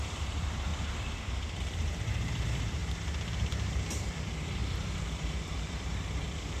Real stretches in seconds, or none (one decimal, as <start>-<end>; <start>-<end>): 0.7-1.6; 2.8-3.3